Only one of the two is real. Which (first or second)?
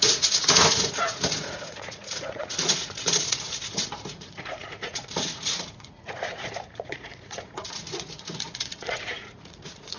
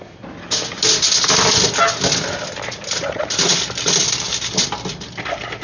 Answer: second